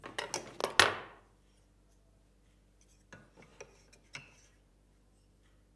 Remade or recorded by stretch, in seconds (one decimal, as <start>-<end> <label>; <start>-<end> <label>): 0.0-5.8 recorded